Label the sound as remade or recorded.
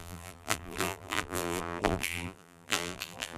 remade